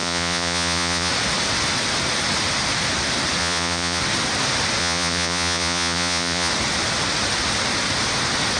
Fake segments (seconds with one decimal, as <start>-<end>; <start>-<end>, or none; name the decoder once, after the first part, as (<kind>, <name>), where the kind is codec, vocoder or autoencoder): 0.0-1.1 (vocoder, Vocos); 3.4-4.0; 4.8-6.5